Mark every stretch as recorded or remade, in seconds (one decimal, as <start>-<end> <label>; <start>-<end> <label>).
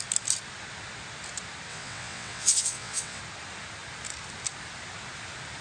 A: 0.0-1.7 recorded; 1.7-3.2 remade; 3.2-5.6 recorded